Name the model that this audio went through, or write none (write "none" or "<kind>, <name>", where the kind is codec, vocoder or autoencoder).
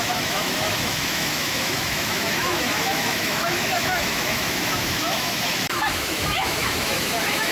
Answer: autoencoder, DAC-VAE